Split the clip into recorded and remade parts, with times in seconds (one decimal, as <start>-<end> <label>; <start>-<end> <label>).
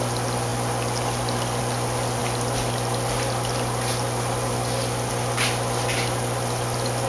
0.0-7.1 recorded